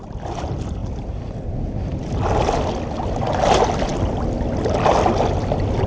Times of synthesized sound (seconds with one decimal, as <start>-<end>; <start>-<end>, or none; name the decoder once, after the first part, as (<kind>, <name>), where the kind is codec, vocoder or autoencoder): none